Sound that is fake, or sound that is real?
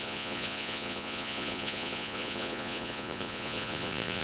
fake